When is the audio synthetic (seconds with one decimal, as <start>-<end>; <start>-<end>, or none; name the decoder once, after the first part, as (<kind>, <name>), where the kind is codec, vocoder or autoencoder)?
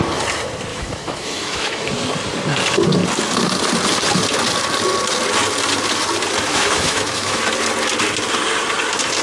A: 0.7-1.9 (autoencoder, DAC-VAE); 6.5-7.4